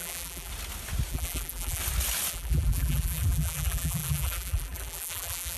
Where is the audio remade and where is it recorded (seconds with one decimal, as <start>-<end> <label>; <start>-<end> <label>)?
0.0-0.5 remade; 0.5-1.1 recorded; 1.1-1.8 remade; 1.8-2.3 recorded; 2.3-5.6 remade